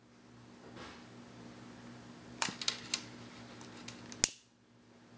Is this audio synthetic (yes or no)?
no